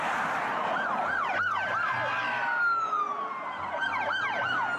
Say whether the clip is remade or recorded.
recorded